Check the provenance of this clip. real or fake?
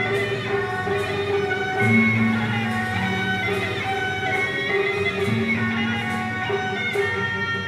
real